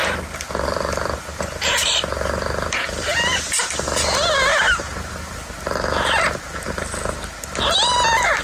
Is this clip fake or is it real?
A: real